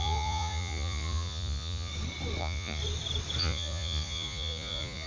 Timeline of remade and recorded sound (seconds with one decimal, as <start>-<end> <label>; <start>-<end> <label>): 0.0-1.9 remade; 1.9-2.4 recorded; 2.4-2.8 remade; 2.8-3.4 recorded; 3.4-5.1 remade